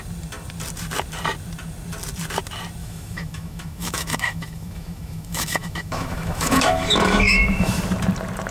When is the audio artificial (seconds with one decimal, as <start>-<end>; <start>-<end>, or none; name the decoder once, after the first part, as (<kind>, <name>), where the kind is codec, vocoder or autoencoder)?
2.8-7.8 (autoencoder, DAC-VAE)